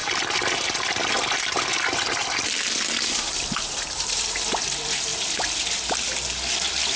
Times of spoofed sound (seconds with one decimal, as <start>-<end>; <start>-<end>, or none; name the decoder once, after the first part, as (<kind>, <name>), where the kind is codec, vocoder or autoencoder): 0.0-1.1 (vocoder, BigVGAN v2); 2.2-4.6